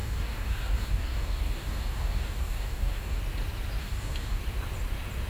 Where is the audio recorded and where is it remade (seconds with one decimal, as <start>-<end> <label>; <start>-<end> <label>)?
0.0-3.2 remade; 3.2-3.8 recorded; 3.8-4.4 remade; 4.4-5.3 recorded